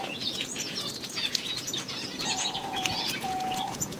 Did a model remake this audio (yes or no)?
yes